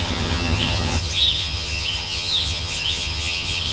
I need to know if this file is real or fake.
fake